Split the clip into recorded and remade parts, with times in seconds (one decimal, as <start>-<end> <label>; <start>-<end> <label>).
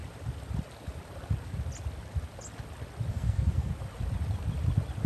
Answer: 0.0-3.1 recorded; 3.1-3.7 remade; 3.7-5.1 recorded